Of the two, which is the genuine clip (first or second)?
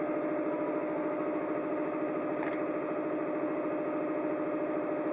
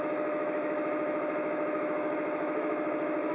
first